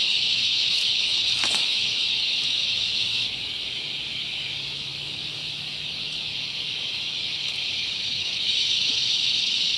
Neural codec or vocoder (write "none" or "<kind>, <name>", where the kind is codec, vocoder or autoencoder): codec, DAC